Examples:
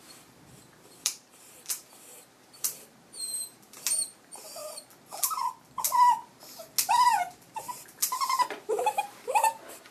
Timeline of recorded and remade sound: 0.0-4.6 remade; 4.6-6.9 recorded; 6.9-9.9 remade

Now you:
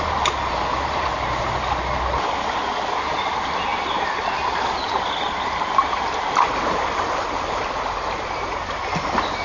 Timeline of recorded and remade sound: 0.0-1.1 recorded; 1.1-1.7 remade; 1.7-3.7 recorded; 3.7-7.6 remade; 7.6-9.4 recorded

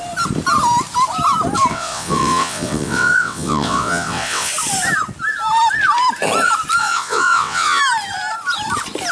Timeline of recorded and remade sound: 0.0-1.7 recorded; 1.7-4.5 remade; 4.5-6.8 recorded; 6.8-7.8 remade; 7.8-9.1 recorded

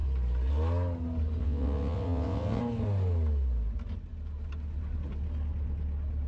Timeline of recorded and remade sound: 0.0-1.4 recorded; 1.4-2.6 remade; 2.6-6.3 recorded

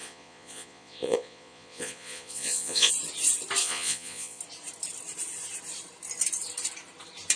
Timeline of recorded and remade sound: 0.0-2.9 remade; 2.9-3.6 recorded; 3.6-4.4 remade; 4.4-7.4 recorded